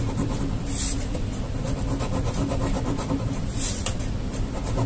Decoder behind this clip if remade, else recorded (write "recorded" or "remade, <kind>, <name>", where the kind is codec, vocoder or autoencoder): remade, vocoder, BigVGAN v2